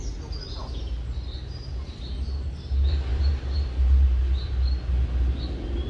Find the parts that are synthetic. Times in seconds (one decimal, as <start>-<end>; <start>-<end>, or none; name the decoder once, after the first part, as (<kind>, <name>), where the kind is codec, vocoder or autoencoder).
1.7-4.2 (vocoder, BigVGAN v2)